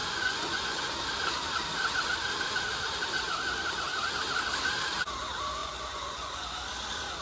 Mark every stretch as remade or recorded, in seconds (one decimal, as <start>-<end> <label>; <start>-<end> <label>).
0.0-0.8 remade; 0.8-5.6 recorded; 5.6-6.6 remade; 6.6-7.2 recorded